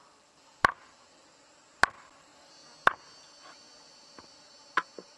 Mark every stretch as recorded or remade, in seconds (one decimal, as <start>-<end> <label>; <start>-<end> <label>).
0.0-5.2 recorded